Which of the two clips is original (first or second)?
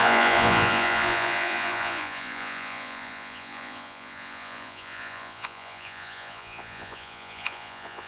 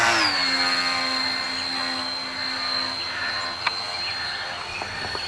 second